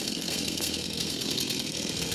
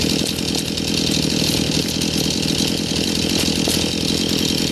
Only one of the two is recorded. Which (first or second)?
second